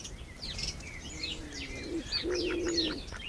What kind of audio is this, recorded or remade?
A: remade